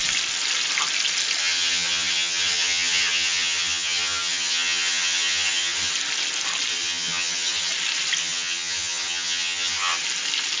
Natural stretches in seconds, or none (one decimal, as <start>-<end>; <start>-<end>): 0.0-1.4; 5.9-6.7; 7.7-8.2; 10.0-10.6